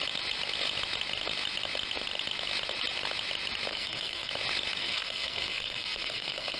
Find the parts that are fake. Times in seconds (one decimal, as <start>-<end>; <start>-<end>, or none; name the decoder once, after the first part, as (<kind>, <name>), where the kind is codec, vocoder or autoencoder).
3.7-4.3 (codec, SNAC); 4.8-6.6